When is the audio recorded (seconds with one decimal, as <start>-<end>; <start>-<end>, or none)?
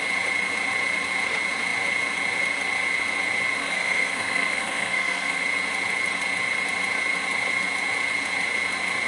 0.0-3.6; 5.4-9.1